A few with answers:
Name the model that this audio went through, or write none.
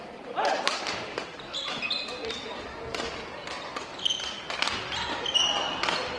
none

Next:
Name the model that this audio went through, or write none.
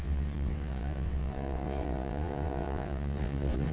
vocoder, WaveNeXt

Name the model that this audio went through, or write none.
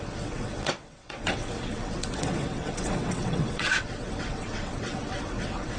vocoder, WaveNeXt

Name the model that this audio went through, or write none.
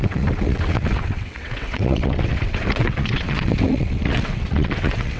vocoder, WaveNeXt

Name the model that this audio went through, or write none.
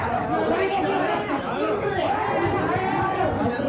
none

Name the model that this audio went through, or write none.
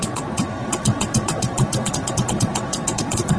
vocoder, WaveNeXt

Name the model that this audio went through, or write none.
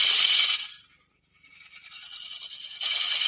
none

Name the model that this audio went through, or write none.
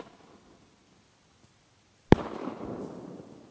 none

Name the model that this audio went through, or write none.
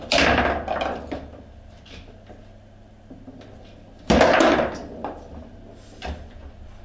none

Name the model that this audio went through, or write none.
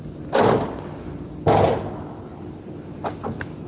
none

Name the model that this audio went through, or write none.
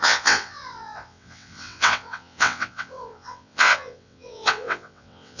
vocoder, WaveNeXt